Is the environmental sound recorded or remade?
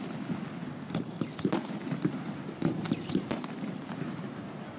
recorded